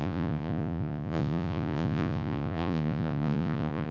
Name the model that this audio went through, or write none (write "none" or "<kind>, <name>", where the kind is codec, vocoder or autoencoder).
vocoder, Vocos